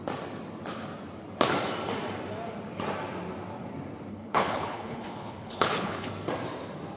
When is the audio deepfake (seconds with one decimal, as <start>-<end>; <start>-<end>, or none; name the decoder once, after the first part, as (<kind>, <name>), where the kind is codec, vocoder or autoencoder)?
4.1-6.1 (codec, HILCodec)

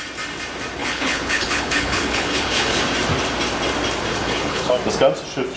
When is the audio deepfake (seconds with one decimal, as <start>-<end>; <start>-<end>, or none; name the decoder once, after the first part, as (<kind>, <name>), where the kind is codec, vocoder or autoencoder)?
0.8-2.8 (codec, HILCodec); 4.1-4.7

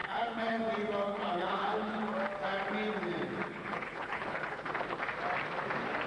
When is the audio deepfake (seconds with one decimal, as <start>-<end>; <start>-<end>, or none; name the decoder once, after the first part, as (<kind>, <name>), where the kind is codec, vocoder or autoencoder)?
0.0-0.6 (codec, HILCodec); 1.1-2.0; 3.5-4.7

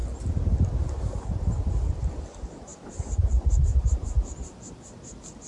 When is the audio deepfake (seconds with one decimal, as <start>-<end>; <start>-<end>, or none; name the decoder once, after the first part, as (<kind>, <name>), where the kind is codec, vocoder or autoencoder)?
none

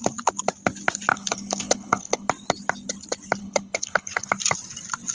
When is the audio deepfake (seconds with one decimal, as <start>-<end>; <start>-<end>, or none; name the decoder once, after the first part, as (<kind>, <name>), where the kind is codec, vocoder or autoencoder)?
1.1-2.3 (codec, HILCodec); 3.4-4.3

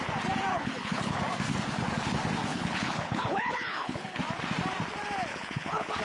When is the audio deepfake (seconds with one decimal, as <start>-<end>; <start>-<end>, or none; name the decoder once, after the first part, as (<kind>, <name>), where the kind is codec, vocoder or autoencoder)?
0.5-1.2 (codec, HILCodec); 2.5-4.2; 5.3-6.0

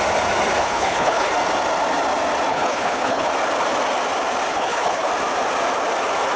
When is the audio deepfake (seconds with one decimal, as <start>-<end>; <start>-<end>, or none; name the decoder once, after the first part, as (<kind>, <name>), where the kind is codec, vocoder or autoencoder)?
0.6-1.3 (codec, HILCodec); 2.5-3.3; 4.5-5.1

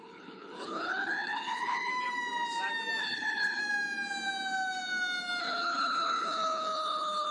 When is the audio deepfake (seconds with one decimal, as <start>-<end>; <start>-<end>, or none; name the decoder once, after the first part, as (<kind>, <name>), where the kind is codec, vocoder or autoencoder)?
0.0-1.9 (codec, HILCodec); 3.0-3.6; 5.4-7.3